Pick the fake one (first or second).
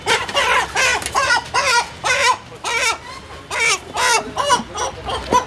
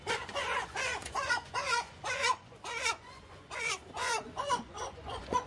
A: second